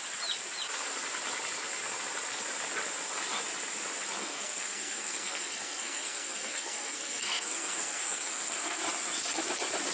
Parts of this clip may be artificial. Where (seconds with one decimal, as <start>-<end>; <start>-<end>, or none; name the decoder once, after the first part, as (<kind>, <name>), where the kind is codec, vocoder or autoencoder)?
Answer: 4.2-8.8 (codec, SNAC)